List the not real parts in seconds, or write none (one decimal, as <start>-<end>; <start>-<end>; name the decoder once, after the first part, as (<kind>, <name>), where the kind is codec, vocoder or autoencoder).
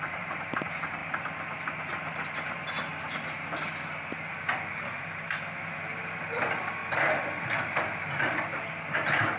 0.0-1.0 (vocoder, BigVGAN v2); 5.0-6.8; 7.4-9.4